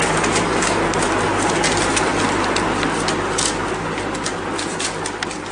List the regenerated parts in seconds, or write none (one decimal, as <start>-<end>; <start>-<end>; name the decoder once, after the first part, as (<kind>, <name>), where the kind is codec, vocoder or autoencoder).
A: none